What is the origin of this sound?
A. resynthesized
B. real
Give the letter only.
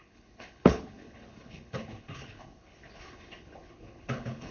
A